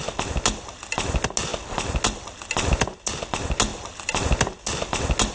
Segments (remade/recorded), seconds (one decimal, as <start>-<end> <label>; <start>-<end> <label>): 0.0-5.3 recorded